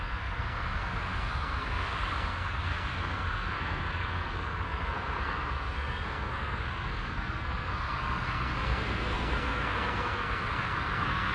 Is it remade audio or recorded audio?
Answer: remade